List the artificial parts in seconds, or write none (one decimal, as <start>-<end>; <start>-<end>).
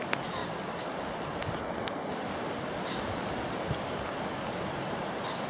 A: 1.6-2.1